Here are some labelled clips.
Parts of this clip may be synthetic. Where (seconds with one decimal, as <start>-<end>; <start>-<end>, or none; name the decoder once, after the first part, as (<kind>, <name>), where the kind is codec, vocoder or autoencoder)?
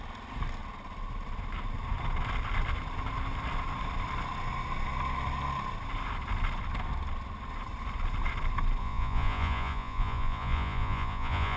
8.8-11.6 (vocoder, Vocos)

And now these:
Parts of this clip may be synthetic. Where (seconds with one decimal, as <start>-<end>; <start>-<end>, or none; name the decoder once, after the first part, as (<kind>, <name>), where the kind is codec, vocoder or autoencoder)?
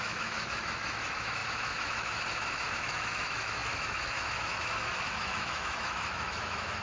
0.0-6.8 (autoencoder, DAC-VAE)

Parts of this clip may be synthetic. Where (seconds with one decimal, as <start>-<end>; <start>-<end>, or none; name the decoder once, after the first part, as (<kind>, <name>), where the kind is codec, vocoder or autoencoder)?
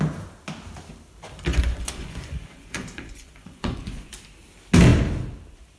1.5-4.1 (vocoder, Vocos)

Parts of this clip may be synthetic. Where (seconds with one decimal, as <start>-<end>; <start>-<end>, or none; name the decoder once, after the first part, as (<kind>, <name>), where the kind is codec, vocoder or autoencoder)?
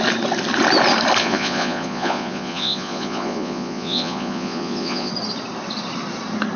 1.2-5.1 (vocoder, Vocos)